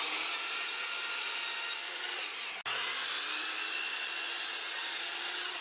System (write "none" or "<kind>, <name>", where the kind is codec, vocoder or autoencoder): none